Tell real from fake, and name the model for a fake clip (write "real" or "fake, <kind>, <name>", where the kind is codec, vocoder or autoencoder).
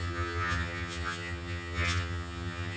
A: fake, vocoder, HiFi-GAN